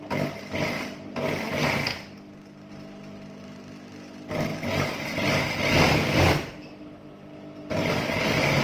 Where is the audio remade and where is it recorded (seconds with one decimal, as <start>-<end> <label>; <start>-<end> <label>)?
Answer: 0.0-8.6 recorded